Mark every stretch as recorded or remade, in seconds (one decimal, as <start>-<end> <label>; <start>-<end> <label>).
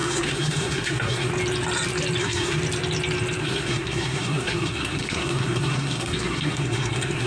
0.0-1.3 remade; 1.3-2.2 recorded; 2.2-2.6 remade; 2.6-3.4 recorded; 3.4-7.3 remade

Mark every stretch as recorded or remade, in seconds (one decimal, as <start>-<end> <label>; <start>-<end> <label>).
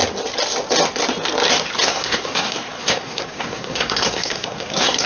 0.0-1.8 recorded; 1.8-5.1 remade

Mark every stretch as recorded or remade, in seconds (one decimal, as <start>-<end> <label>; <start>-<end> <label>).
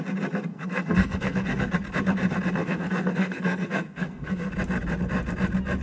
0.0-0.5 recorded; 0.5-1.7 remade; 1.7-2.6 recorded; 2.6-4.5 remade; 4.5-5.8 recorded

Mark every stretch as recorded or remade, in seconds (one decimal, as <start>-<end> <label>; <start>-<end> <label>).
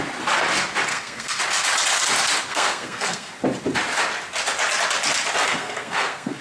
0.0-0.9 recorded; 0.9-1.4 remade; 1.4-2.5 recorded; 2.5-3.3 remade; 3.3-5.5 recorded; 5.5-6.4 remade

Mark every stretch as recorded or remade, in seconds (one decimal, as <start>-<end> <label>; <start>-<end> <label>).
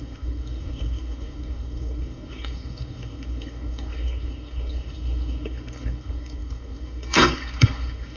0.0-8.2 remade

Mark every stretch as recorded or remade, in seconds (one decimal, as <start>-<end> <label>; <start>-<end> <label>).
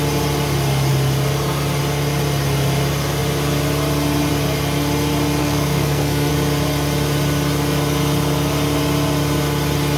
0.0-5.4 recorded; 5.4-6.3 remade; 6.3-10.0 recorded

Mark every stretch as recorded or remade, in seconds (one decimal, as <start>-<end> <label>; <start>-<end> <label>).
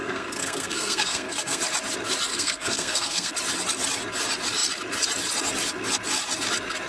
0.0-1.6 remade; 1.6-2.3 recorded; 2.3-3.3 remade; 3.3-6.9 recorded